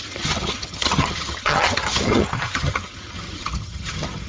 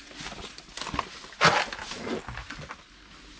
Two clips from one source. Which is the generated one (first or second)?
first